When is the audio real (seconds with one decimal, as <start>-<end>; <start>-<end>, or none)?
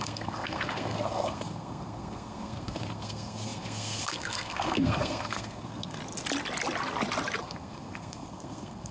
6.0-7.4